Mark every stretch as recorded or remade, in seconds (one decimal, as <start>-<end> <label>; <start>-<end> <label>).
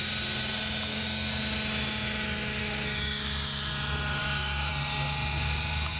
0.0-0.9 recorded; 0.9-1.4 remade; 1.4-2.6 recorded; 2.6-3.7 remade; 3.7-4.2 recorded; 4.2-4.7 remade; 4.7-6.0 recorded